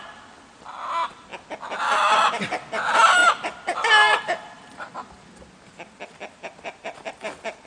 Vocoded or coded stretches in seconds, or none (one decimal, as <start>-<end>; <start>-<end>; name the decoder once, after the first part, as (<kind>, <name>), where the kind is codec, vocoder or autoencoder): 3.2-7.1 (vocoder, BigVGAN v2)